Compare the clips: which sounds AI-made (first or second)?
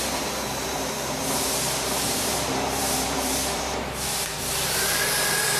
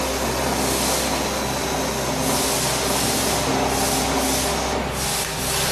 first